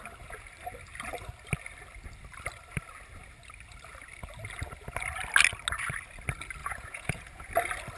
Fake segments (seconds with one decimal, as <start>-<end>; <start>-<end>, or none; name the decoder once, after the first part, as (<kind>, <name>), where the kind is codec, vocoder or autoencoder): 6.6-7.5 (vocoder, Vocos)